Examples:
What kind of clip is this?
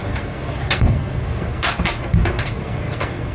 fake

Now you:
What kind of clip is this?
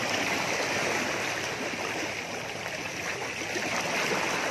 real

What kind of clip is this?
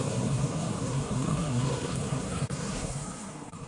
fake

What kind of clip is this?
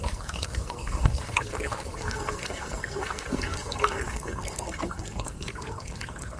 fake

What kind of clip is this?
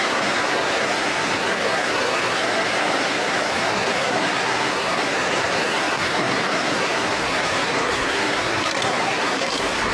fake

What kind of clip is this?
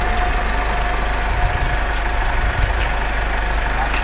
real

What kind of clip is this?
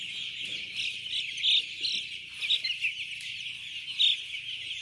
real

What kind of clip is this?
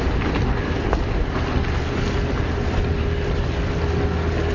real